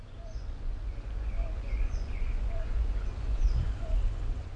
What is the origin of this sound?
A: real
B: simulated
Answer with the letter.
B